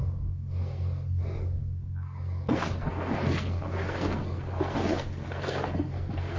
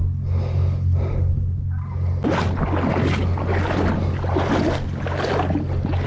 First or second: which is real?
second